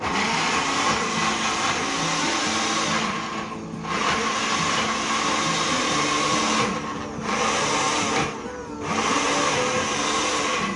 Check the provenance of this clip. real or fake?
real